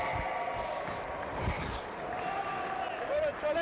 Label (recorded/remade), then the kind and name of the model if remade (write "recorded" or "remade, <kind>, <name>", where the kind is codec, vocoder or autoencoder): recorded